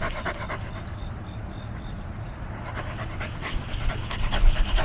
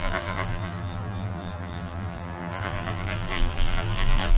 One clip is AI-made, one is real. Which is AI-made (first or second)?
second